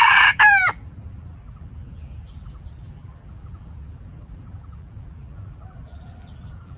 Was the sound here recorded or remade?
remade